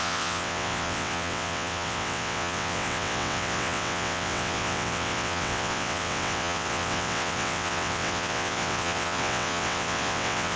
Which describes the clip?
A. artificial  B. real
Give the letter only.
A